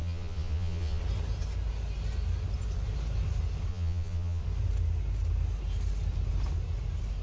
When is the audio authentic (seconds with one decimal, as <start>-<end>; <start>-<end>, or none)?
1.0-3.7; 4.4-7.2